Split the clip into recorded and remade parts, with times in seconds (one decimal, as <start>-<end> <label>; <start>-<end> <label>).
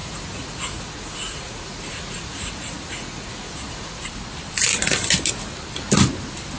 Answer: 0.0-4.0 remade; 4.0-6.6 recorded